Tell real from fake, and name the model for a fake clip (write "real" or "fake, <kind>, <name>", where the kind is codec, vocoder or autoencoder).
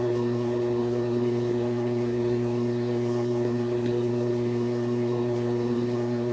fake, codec, SNAC